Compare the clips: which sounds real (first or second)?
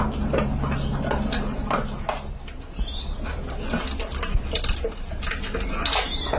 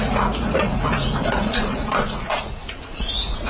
first